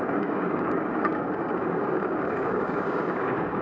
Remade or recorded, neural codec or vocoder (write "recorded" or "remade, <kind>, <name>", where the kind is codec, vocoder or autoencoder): remade, codec, DAC